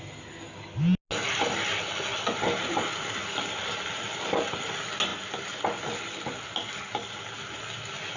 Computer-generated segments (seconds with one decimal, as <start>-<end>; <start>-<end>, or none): none